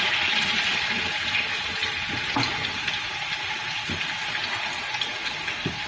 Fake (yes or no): no